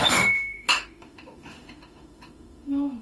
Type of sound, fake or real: fake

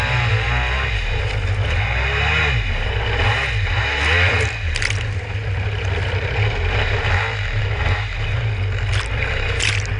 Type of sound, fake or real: real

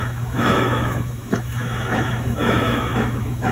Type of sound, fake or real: fake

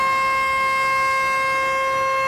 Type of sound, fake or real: real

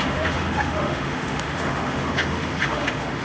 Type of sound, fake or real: fake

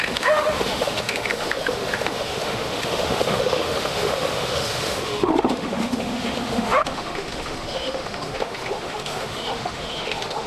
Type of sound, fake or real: fake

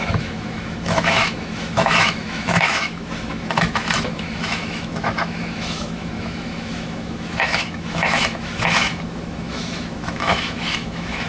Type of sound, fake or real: fake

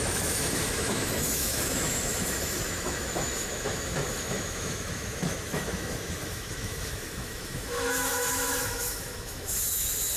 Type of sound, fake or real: fake